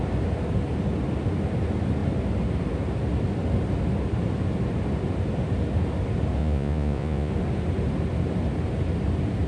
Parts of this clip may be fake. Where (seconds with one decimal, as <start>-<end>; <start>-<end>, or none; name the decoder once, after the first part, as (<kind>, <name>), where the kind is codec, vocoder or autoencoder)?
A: 6.4-7.3 (vocoder, Vocos)